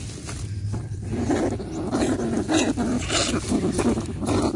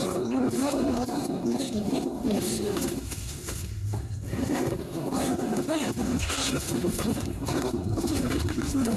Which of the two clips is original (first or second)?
first